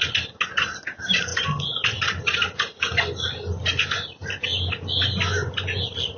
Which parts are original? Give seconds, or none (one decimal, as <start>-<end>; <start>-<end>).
0.0-6.2